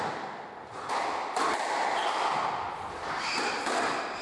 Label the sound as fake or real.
real